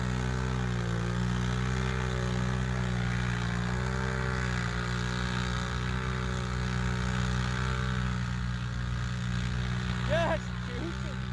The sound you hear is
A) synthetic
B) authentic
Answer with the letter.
B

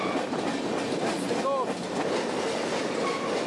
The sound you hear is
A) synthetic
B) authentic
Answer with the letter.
B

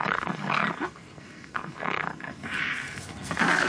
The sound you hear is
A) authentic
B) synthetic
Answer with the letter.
B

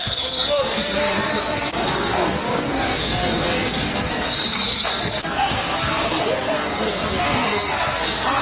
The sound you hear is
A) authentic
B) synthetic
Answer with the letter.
B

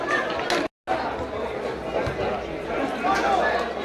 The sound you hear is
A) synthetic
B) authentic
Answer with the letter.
B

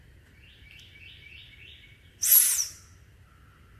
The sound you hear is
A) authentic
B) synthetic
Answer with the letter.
A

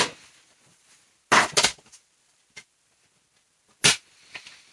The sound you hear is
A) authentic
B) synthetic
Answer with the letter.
A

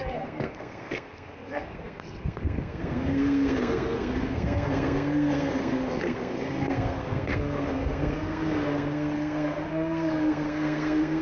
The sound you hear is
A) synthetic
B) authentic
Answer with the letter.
A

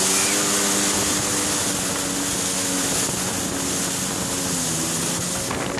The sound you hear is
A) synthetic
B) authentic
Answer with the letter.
B